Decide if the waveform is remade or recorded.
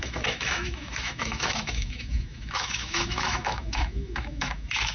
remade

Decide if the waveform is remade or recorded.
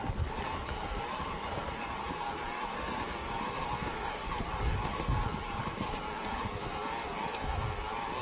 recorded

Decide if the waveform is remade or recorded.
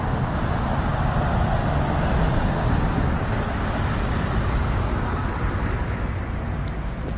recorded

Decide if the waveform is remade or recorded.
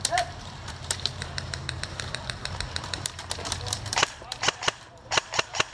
remade